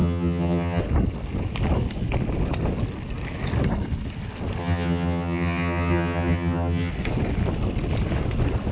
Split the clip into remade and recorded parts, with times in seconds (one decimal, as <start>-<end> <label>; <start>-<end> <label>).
0.0-0.8 remade; 0.8-4.6 recorded; 4.6-6.9 remade; 6.9-8.7 recorded